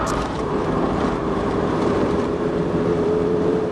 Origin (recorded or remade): remade